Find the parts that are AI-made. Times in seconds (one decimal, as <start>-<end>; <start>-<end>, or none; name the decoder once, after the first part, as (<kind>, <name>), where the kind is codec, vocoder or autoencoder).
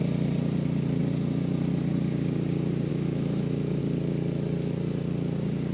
2.9-3.8 (autoencoder, DAC-VAE)